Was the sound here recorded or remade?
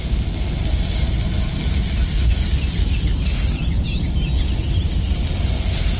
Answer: recorded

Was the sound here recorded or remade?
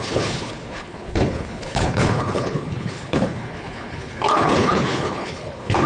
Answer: remade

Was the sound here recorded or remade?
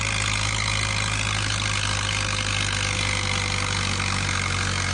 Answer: recorded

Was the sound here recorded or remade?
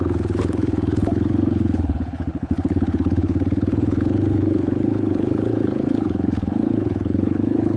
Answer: remade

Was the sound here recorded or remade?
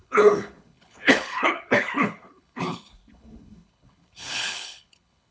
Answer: remade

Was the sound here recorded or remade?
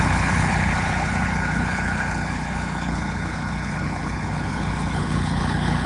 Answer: remade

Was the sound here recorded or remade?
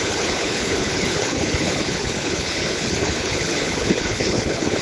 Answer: remade